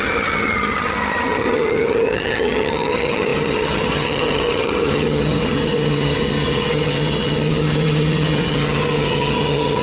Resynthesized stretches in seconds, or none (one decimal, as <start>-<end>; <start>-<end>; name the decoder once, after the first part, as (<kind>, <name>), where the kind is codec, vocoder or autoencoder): 0.0-9.8 (vocoder, HiFi-GAN)